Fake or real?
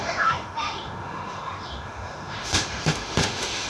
fake